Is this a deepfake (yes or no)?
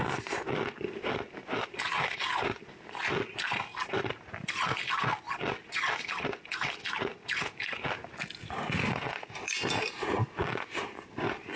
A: no